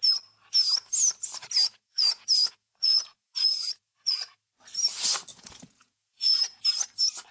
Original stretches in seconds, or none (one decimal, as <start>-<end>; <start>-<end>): 0.0-1.6; 4.5-5.3; 6.6-7.3